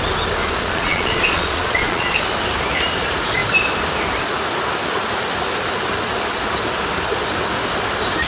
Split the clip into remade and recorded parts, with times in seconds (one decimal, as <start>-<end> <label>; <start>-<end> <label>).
0.0-0.4 recorded; 0.4-2.2 remade; 2.2-8.3 recorded

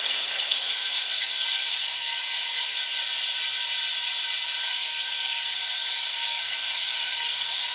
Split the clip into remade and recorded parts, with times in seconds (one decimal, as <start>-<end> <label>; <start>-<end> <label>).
0.0-2.8 remade; 2.8-4.6 recorded; 4.6-7.7 remade

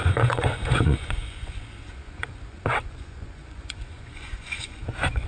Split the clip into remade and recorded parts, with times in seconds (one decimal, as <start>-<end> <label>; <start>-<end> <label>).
0.0-5.3 remade

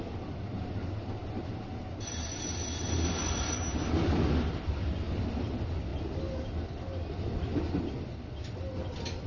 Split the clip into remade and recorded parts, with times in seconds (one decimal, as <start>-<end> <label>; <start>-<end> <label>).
0.0-9.3 recorded

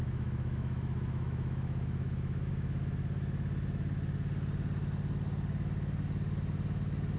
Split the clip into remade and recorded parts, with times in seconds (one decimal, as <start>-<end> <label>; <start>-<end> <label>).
0.0-2.5 remade; 2.5-7.2 recorded